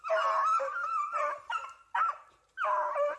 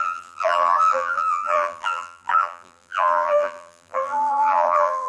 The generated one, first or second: second